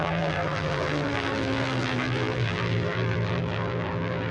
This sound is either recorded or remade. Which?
remade